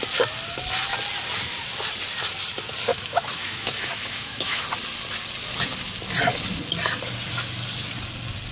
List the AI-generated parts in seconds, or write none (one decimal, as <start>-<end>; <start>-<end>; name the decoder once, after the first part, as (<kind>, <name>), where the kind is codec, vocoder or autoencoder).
2.9-4.6 (autoencoder, DAC-VAE)